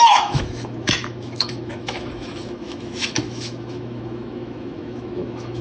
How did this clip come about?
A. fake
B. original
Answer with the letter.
A